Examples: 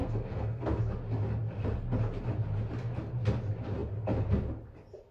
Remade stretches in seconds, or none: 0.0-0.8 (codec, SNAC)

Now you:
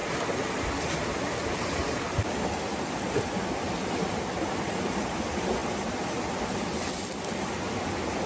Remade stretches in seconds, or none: none

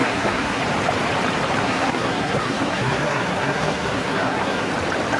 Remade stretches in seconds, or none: 0.0-0.6 (codec, SNAC); 1.6-4.7

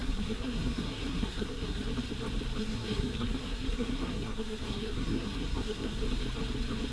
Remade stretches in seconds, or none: 0.0-1.8 (codec, SNAC); 2.6-6.0

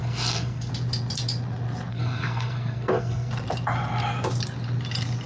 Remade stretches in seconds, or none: 0.0-0.7 (codec, SNAC); 1.9-3.3